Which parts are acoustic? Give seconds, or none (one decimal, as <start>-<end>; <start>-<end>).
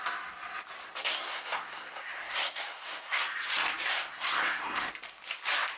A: 0.0-1.0; 3.2-3.9; 4.9-5.8